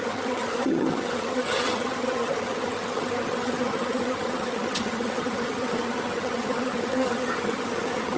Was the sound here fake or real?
fake